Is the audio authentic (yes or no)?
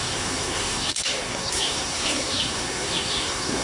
no